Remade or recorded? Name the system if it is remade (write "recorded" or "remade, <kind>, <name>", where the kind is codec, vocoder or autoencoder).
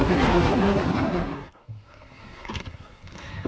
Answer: remade, codec, SNAC